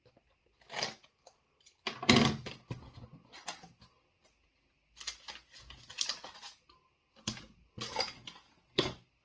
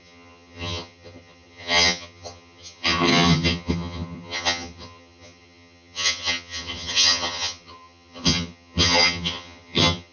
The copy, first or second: second